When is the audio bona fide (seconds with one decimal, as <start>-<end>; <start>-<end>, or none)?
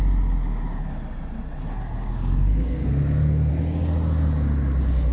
0.0-2.1; 3.5-5.1